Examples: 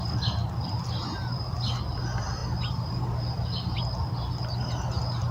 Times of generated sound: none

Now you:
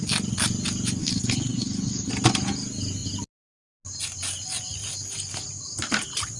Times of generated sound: 1.0-2.1 (codec, HILCodec)

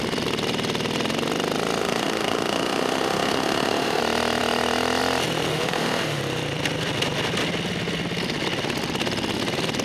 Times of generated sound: 1.8-4.0 (autoencoder, DAC-VAE); 5.5-6.2

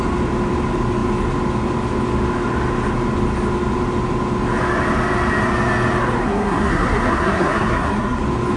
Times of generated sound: 6.2-8.2 (codec, SNAC)

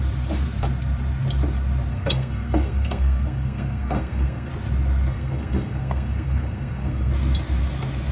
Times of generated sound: 1.9-4.5 (codec, SNAC); 5.1-7.1

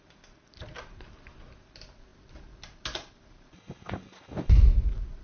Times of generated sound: none

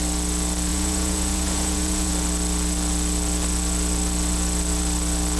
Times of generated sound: 0.7-2.1 (vocoder, Vocos)